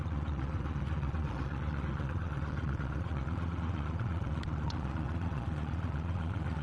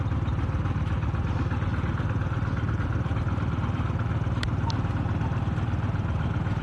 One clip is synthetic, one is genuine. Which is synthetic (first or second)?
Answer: first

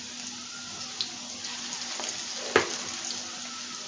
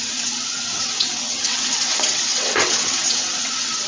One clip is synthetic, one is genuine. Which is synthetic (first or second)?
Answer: second